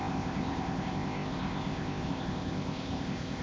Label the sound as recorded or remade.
remade